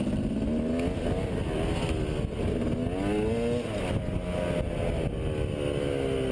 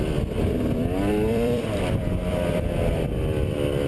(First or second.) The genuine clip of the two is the first